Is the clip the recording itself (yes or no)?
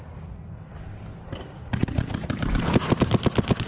yes